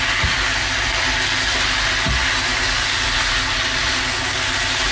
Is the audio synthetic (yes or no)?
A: no